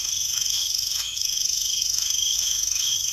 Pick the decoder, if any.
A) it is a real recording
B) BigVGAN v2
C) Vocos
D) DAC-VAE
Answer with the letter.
D